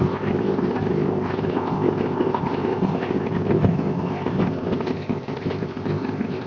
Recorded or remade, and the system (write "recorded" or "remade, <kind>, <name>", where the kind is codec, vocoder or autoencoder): remade, codec, ZipCodec